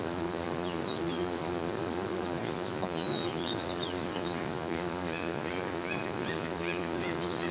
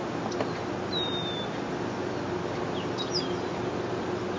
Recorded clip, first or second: second